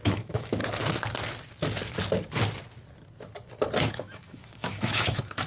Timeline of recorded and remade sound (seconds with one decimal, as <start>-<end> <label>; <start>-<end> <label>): 0.0-0.6 remade; 0.6-3.9 recorded; 3.9-5.5 remade